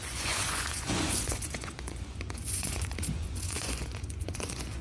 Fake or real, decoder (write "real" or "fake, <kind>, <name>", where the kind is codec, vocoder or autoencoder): fake, vocoder, Vocos